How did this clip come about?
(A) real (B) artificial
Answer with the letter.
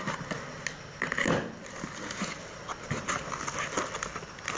A